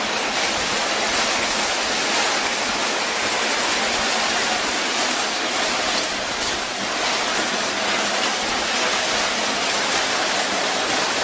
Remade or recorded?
recorded